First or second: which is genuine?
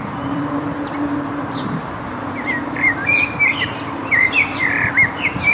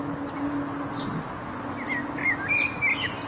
second